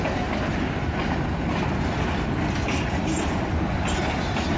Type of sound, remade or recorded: recorded